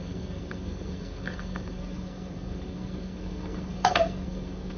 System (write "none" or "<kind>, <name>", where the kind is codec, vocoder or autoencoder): codec, SNAC